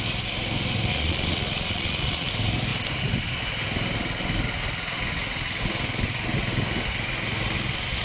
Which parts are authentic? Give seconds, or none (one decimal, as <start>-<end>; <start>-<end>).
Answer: 0.0-0.9; 2.3-8.0